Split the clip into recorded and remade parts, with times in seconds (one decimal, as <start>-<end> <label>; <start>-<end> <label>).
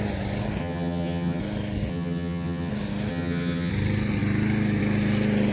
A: 0.0-0.6 recorded; 0.6-1.4 remade; 1.4-1.9 recorded; 1.9-2.7 remade; 2.7-3.1 recorded; 3.1-3.7 remade; 3.7-5.5 recorded